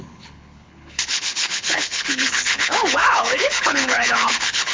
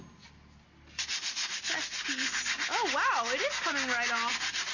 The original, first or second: second